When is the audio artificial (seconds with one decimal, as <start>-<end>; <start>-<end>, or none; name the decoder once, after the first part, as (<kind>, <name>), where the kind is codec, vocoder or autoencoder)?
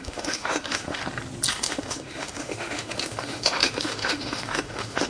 0.0-1.0 (autoencoder, DAC-VAE); 1.5-5.1